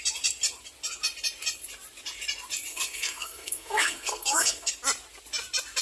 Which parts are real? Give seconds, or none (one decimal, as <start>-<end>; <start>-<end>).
0.0-2.7; 4.7-5.8